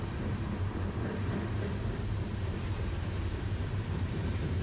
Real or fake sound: fake